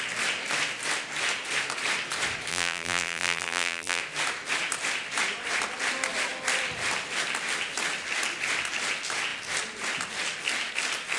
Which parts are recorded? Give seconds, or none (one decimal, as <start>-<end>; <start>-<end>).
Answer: 0.0-2.5; 4.0-11.2